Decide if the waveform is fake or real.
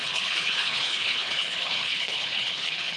fake